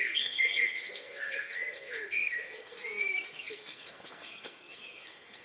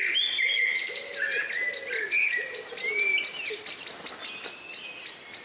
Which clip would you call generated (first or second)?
first